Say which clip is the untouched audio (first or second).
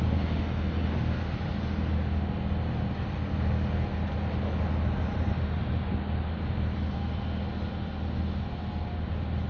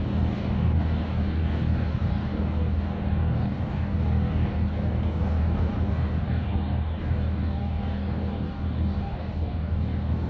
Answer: first